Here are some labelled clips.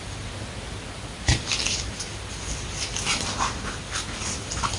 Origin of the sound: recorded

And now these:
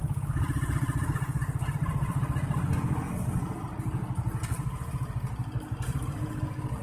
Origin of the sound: recorded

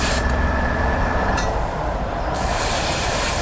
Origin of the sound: remade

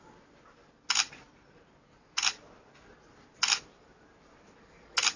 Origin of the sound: recorded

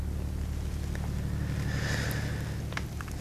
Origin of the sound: recorded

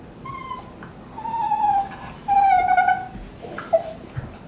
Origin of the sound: recorded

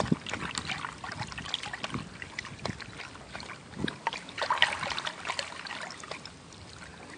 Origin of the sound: recorded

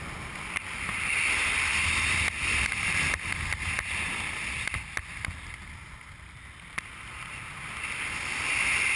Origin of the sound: recorded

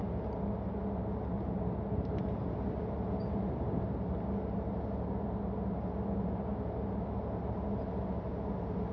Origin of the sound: recorded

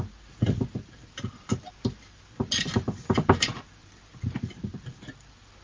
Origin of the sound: recorded